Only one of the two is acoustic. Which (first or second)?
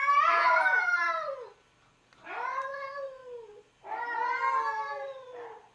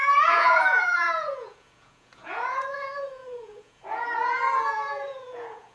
first